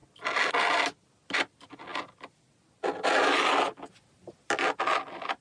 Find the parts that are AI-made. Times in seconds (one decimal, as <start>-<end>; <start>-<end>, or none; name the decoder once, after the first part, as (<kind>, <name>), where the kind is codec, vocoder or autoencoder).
none